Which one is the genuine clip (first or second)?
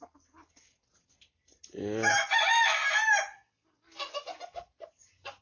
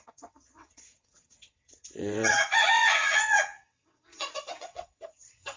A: first